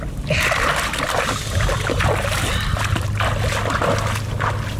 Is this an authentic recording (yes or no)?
yes